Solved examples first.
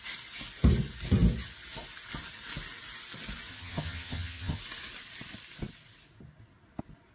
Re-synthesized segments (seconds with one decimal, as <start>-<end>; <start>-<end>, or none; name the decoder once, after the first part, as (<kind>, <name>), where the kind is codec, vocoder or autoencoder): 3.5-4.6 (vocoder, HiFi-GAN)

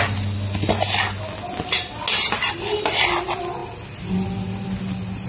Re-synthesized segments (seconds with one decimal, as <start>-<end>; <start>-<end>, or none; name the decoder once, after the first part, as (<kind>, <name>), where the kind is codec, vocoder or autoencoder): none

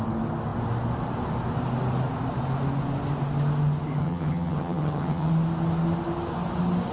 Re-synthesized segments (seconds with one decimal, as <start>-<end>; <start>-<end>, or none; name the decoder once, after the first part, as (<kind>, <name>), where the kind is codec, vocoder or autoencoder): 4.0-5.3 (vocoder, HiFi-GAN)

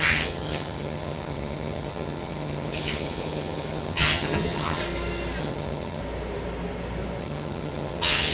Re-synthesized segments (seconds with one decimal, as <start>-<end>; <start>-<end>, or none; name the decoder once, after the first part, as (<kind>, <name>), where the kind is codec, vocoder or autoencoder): 0.0-4.8 (vocoder, HiFi-GAN); 5.4-6.0; 7.2-8.3

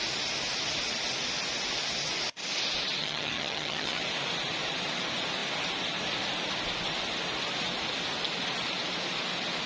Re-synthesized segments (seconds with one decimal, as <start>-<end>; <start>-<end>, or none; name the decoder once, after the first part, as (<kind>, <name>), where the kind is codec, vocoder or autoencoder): 3.0-4.0 (vocoder, HiFi-GAN)

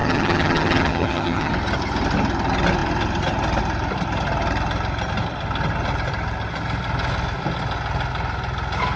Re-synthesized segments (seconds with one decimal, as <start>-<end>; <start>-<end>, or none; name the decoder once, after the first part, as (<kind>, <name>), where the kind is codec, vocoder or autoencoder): 0.0-1.5 (vocoder, HiFi-GAN)